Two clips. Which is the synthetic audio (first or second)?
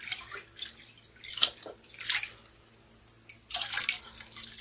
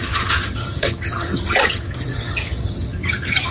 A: second